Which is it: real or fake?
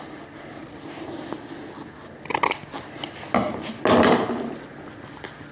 real